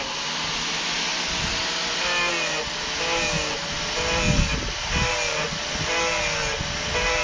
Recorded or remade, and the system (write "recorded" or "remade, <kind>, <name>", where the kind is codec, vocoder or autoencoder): recorded